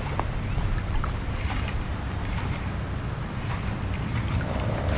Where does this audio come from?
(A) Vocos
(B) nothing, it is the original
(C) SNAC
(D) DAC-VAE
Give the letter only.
B